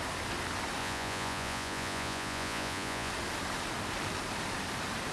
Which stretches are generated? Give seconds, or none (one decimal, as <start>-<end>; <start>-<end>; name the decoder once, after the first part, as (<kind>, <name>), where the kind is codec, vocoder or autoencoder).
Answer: 0.8-3.1 (vocoder, Vocos)